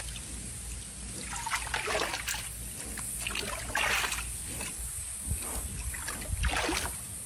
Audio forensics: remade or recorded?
recorded